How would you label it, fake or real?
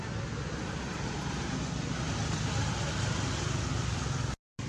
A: real